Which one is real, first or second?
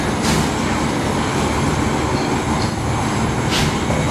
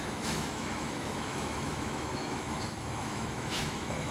first